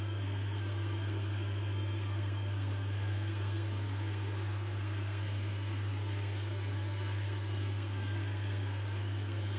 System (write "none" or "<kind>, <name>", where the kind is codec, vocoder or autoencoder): codec, SNAC